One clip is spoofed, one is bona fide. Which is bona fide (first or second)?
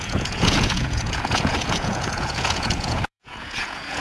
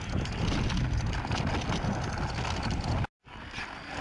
second